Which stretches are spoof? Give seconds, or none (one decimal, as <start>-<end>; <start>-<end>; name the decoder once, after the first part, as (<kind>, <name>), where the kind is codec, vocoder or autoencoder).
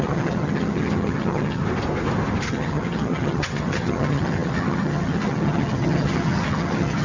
0.0-1.6 (vocoder, HiFi-GAN); 2.5-7.0